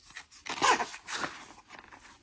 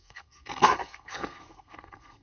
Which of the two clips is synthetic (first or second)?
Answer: second